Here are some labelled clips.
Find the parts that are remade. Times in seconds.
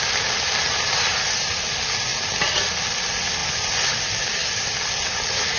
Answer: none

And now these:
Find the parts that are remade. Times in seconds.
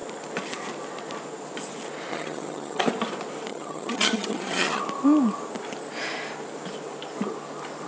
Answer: 2.1-2.8 (vocoder, HiFi-GAN); 3.5-4.8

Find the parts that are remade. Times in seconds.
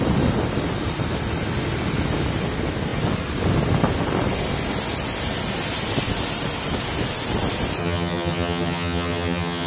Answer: 7.8-9.7 (vocoder, HiFi-GAN)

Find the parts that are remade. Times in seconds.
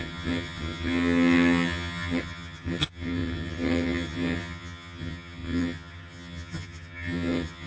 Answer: 0.0-7.7 (vocoder, HiFi-GAN)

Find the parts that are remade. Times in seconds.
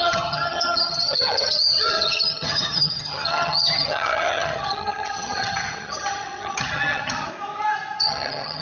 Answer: 0.0-7.3 (vocoder, HiFi-GAN); 8.0-8.6